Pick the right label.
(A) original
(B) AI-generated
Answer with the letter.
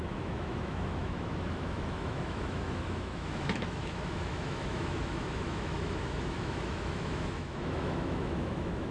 B